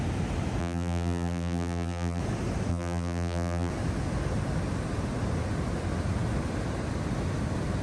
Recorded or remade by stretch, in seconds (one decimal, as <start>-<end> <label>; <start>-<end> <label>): 0.0-0.6 recorded; 0.6-2.2 remade; 2.2-2.7 recorded; 2.7-3.7 remade; 3.7-7.8 recorded